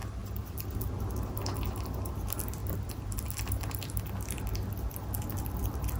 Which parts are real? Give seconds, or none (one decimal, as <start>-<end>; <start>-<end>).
0.0-6.0